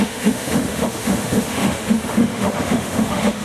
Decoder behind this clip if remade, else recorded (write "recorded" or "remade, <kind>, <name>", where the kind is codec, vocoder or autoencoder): remade, autoencoder, DAC-VAE